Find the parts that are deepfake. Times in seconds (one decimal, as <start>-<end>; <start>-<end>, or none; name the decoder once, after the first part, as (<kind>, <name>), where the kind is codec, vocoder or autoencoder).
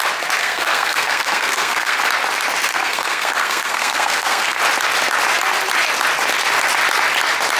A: 0.4-2.0 (codec, SNAC); 2.7-4.6